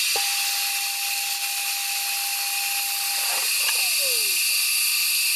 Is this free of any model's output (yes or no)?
yes